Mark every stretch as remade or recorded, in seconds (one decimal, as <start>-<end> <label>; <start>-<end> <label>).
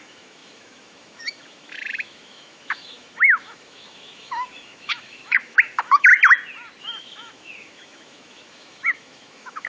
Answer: 0.0-6.1 remade; 6.1-6.8 recorded; 6.8-9.7 remade